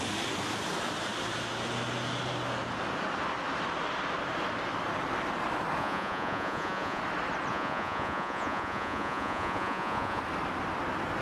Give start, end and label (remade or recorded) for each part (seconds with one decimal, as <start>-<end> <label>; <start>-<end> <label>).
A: 0.0-5.8 recorded; 5.8-7.0 remade; 7.0-7.5 recorded; 7.5-10.2 remade; 10.2-11.2 recorded